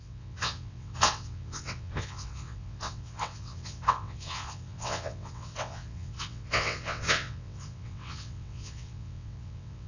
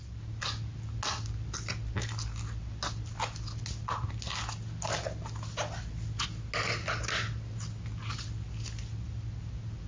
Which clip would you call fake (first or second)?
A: first